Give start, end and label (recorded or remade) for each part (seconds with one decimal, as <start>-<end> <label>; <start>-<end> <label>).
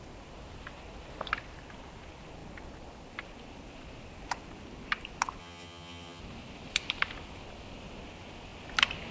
0.0-5.4 recorded; 5.4-6.2 remade; 6.2-9.1 recorded